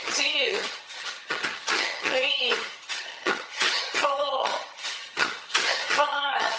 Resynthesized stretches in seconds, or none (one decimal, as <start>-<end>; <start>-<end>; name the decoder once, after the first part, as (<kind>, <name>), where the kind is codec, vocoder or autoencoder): 0.0-6.6 (vocoder, HiFi-GAN)